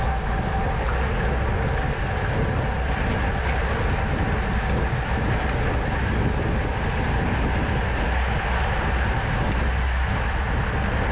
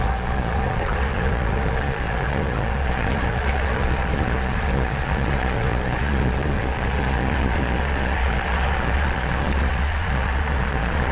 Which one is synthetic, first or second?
second